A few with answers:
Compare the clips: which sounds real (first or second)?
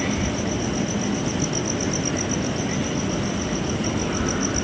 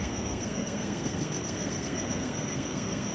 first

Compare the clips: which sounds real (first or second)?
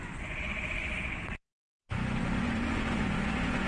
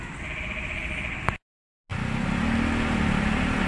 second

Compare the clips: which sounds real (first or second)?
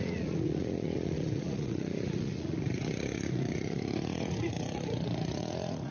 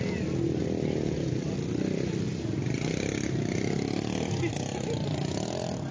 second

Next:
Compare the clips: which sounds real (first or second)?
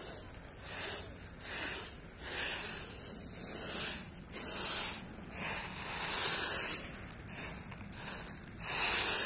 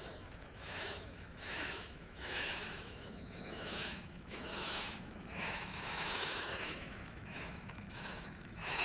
first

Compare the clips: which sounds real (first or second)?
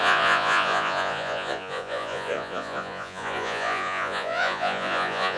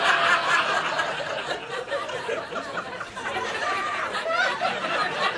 second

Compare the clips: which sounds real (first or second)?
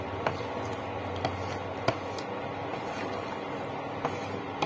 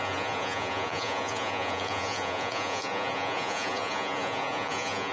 first